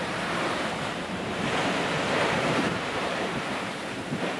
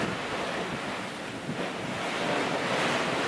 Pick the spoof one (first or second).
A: first